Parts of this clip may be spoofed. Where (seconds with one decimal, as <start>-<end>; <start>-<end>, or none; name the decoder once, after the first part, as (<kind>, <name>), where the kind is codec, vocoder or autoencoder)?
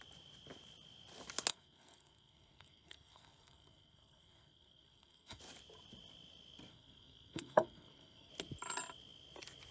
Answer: 1.5-5.4 (codec, SNAC); 6.7-8.3